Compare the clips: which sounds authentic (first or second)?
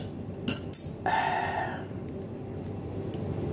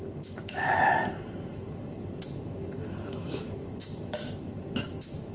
first